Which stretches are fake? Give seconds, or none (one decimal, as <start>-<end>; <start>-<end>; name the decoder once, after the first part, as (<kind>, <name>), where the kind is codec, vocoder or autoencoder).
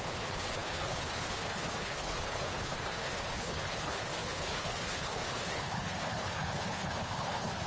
0.0-7.7 (codec, HILCodec)